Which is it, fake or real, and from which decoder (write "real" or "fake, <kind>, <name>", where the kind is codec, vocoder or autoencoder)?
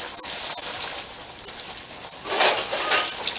real